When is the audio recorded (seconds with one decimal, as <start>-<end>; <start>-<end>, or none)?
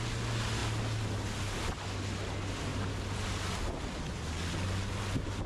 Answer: 0.0-2.7; 3.4-5.5